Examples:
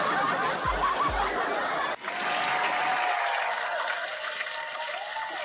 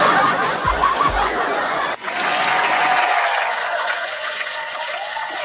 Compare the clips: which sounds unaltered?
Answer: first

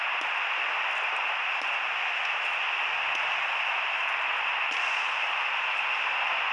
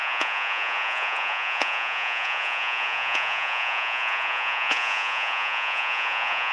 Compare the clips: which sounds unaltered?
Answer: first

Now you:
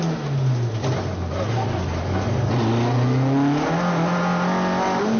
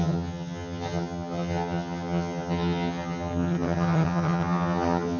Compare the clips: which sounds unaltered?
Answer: first